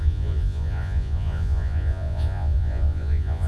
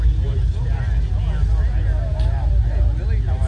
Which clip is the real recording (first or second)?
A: second